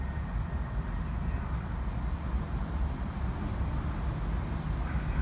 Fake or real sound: real